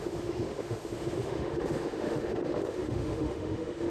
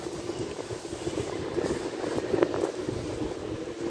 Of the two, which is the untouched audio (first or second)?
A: second